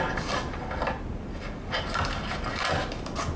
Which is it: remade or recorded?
recorded